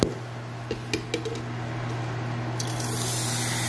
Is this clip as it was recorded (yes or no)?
yes